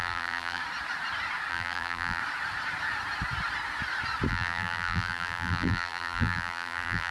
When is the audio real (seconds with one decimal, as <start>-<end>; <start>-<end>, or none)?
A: 0.6-1.5; 2.2-4.3